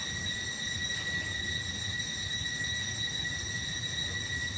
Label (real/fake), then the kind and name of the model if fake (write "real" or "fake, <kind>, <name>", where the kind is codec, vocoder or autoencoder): real